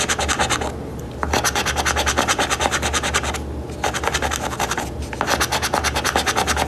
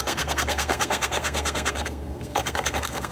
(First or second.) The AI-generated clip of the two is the second